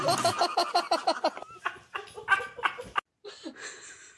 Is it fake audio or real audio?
real